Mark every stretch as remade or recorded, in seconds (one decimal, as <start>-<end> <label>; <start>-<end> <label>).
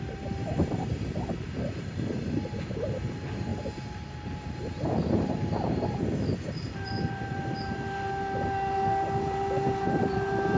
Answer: 0.0-10.6 remade